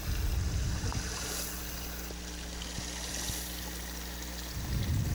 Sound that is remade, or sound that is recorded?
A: recorded